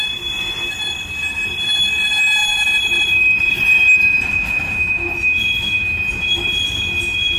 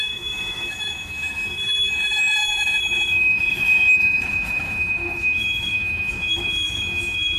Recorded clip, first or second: first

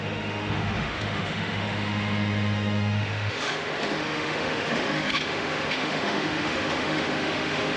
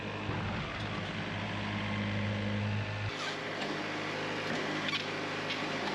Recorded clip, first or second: second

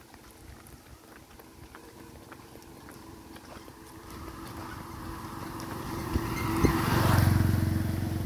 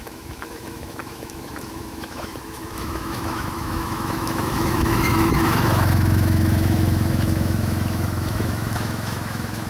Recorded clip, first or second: first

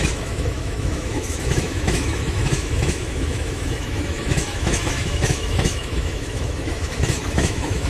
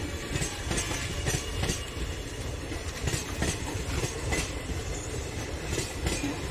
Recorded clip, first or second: second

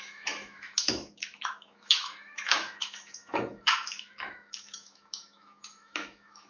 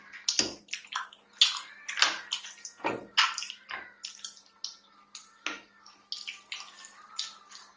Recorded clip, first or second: second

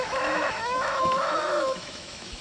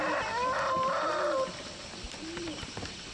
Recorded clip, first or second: second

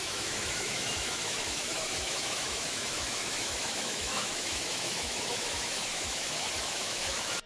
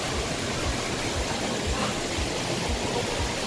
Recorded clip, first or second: second